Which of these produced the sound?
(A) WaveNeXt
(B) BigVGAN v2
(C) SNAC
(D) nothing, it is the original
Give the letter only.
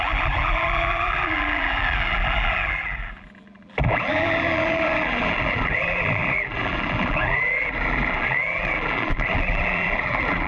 B